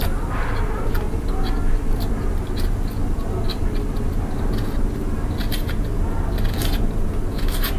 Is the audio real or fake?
real